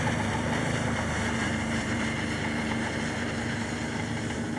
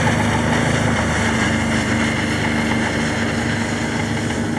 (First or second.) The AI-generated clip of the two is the first